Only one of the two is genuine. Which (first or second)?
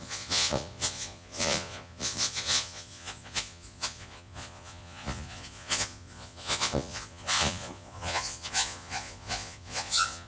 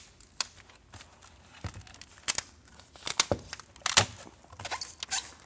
second